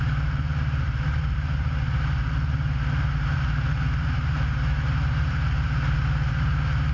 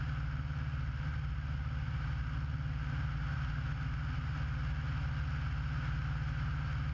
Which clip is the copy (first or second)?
first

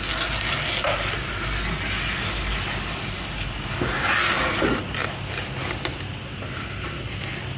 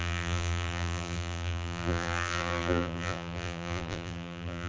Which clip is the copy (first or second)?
second